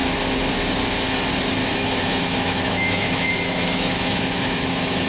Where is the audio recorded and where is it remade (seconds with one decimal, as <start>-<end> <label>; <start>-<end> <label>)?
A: 0.0-1.6 recorded; 1.6-5.1 remade